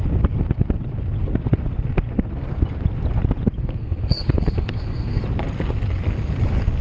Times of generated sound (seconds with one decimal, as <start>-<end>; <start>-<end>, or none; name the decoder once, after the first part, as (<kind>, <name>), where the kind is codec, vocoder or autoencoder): 3.6-5.2 (codec, SNAC)